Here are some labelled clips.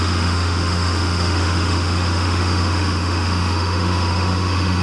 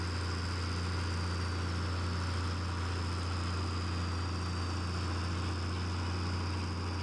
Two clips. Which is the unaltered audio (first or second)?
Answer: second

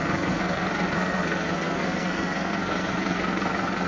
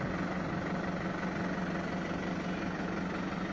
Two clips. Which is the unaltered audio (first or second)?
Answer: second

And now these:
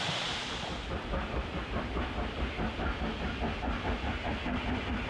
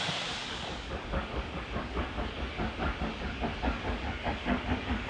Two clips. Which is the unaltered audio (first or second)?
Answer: first